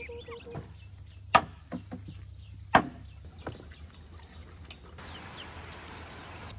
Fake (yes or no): no